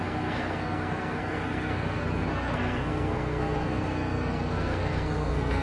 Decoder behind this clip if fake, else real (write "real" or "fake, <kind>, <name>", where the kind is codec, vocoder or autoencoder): fake, codec, SNAC